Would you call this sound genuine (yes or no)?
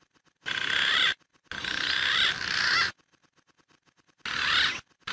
yes